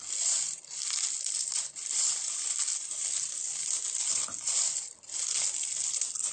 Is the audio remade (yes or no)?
yes